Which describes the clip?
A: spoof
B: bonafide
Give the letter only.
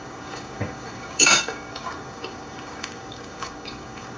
A